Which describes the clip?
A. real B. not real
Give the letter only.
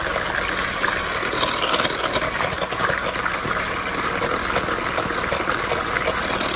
A